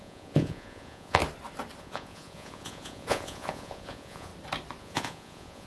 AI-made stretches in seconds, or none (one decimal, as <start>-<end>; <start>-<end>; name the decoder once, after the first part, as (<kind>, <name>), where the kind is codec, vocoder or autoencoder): 0.0-1.2 (vocoder, Vocos); 1.8-4.3; 4.8-5.7